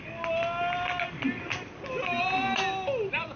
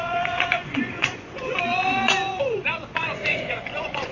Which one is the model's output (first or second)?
second